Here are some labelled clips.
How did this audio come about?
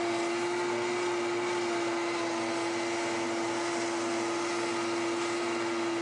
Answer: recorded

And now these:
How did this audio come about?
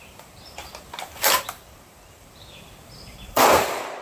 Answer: remade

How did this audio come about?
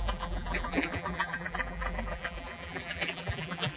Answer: remade